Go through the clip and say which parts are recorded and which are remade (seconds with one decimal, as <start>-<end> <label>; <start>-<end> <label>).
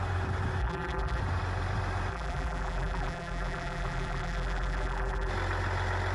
0.0-0.6 recorded; 0.6-1.2 remade; 1.2-2.1 recorded; 2.1-5.3 remade; 5.3-6.1 recorded